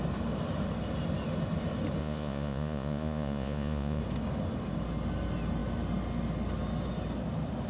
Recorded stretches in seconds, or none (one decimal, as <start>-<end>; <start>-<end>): 0.0-2.0; 4.0-7.7